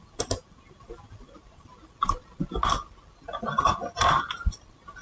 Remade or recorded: recorded